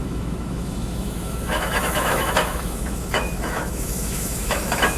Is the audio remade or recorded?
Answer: remade